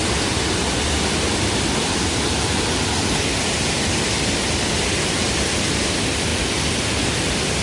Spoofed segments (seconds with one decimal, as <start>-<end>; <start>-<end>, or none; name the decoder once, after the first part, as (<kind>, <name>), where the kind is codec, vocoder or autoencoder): none